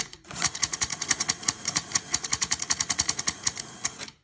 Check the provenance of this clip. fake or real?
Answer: fake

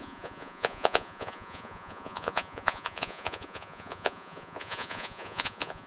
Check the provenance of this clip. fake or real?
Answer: fake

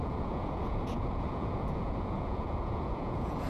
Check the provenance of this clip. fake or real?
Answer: fake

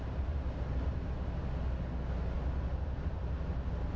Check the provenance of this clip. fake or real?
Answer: real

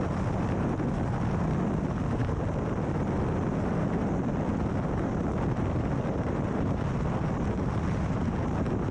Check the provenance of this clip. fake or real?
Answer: real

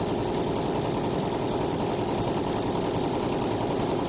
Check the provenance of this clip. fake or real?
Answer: real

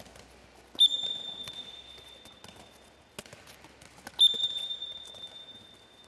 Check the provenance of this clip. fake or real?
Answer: real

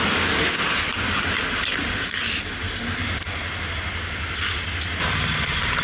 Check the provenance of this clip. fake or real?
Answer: real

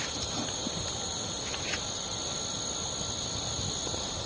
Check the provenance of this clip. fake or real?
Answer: real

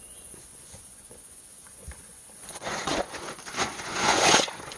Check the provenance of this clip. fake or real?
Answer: fake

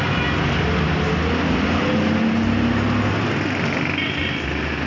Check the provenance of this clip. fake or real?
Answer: real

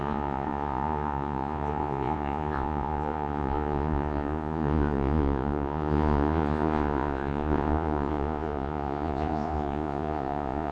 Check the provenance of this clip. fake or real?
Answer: fake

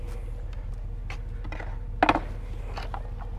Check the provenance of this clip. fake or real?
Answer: real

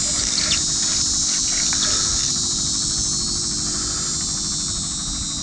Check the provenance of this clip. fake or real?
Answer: real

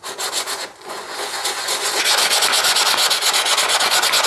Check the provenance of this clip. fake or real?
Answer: fake